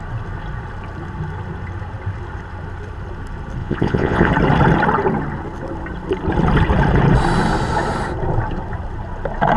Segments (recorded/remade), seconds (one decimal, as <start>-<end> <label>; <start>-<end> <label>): 0.0-3.6 recorded; 3.6-4.3 remade; 4.3-9.6 recorded